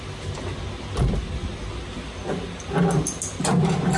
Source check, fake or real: real